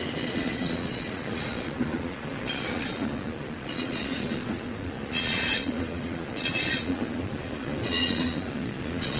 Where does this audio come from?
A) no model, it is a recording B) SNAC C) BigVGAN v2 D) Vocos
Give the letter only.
D